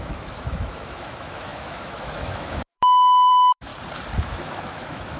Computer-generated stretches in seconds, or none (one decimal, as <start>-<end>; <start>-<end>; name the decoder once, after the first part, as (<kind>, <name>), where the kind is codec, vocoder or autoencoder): 0.0-3.7 (autoencoder, DAC-VAE); 4.2-5.2